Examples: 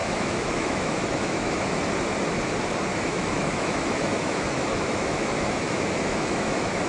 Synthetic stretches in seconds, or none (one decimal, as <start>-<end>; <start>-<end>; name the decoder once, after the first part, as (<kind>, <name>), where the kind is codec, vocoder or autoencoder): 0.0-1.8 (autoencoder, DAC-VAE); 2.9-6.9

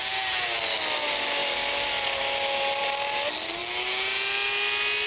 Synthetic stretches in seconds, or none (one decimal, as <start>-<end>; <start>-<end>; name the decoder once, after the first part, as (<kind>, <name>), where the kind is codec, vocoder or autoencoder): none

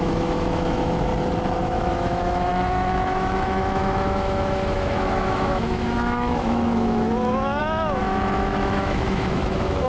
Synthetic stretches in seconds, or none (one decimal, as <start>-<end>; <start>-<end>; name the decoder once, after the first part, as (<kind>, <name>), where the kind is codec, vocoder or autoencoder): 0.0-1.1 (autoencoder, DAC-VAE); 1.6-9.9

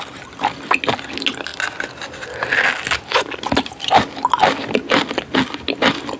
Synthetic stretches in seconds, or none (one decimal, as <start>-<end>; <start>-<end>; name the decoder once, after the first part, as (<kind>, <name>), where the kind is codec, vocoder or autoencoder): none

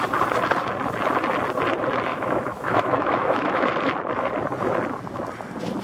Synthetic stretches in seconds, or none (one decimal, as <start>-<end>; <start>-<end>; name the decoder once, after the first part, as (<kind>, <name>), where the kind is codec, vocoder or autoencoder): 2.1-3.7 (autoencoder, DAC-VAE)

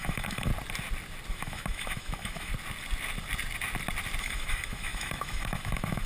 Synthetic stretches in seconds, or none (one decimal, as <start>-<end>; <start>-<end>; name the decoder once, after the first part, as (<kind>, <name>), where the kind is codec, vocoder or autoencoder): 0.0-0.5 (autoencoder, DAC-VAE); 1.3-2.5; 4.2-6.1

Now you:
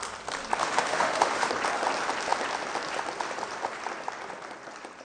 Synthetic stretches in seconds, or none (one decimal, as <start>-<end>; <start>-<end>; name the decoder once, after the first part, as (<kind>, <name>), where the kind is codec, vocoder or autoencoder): 0.6-1.5 (autoencoder, DAC-VAE)